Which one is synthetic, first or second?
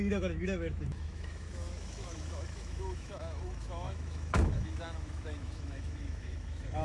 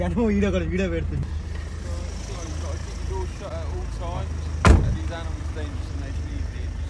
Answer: first